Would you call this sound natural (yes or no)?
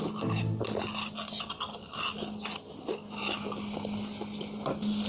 yes